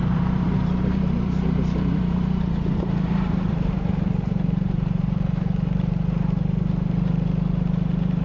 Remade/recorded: remade